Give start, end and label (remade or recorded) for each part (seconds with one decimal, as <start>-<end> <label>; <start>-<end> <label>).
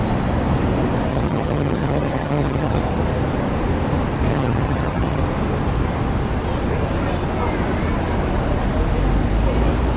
0.0-1.1 recorded; 1.1-2.8 remade; 2.8-4.3 recorded; 4.3-5.2 remade; 5.2-10.0 recorded